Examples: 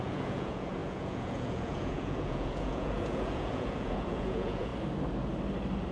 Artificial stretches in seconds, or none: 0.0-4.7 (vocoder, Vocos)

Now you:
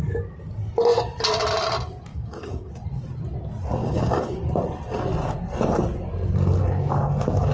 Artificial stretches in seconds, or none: 2.1-2.7 (codec, DAC); 3.8-4.4

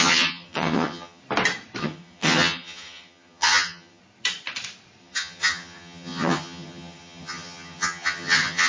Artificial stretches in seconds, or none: 0.0-1.2 (vocoder, HiFi-GAN); 1.8-4.0; 5.0-8.7

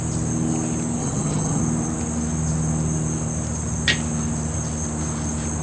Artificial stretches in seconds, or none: 1.0-1.6 (vocoder, HiFi-GAN)

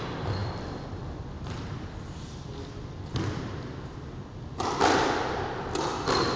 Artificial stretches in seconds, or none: 0.4-1.0 (vocoder, BigVGAN v2)

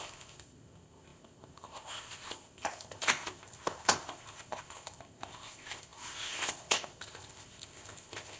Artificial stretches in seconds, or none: 0.0-8.4 (codec, ZipCodec)